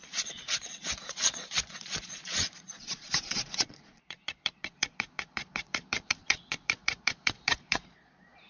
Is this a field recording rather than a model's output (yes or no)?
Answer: no